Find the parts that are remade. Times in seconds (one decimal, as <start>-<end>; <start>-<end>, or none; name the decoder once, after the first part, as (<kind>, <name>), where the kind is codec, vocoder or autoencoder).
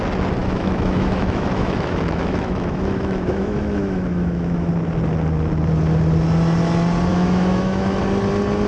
0.4-4.7 (autoencoder, DAC-VAE); 7.1-8.0